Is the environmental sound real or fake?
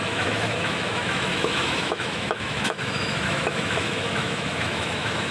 fake